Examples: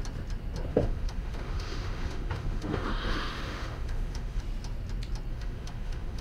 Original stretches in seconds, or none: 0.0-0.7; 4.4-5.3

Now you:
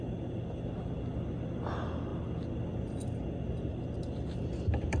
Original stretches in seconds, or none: 0.0-5.0

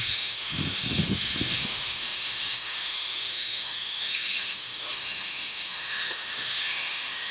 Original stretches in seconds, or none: none

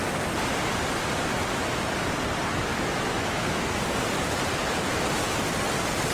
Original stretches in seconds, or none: 0.0-2.7; 3.7-6.1

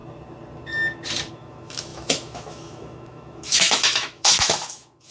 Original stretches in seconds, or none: 0.0-1.3

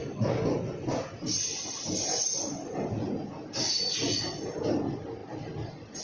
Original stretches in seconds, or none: 0.0-6.0

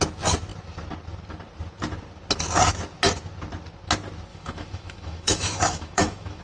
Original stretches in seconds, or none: 0.0-4.3

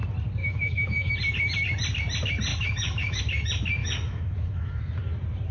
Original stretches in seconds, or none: 0.0-0.4; 1.1-2.5; 3.2-3.8; 4.8-5.5